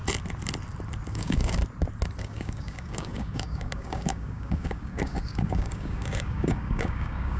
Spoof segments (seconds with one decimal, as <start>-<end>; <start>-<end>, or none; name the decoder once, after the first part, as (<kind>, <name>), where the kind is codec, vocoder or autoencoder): 1.1-1.6 (codec, DAC); 2.2-7.4